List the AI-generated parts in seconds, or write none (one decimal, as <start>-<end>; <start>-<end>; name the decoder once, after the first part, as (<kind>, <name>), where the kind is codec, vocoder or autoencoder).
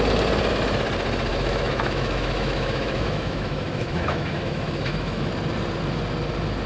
1.3-5.3 (autoencoder, DAC-VAE)